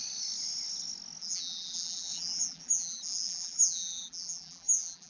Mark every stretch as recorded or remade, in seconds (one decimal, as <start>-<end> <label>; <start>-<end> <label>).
0.0-1.2 recorded; 1.2-5.1 remade